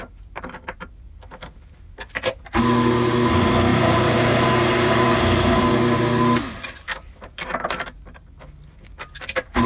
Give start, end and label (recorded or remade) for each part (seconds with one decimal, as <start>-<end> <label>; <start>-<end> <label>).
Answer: 0.0-3.7 recorded; 3.7-5.6 remade; 5.6-9.7 recorded